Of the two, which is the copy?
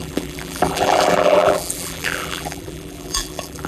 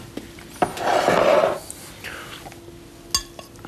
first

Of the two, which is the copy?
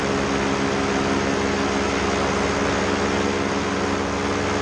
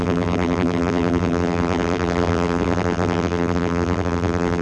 second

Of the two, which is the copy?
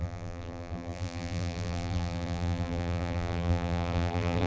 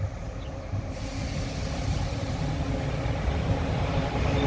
first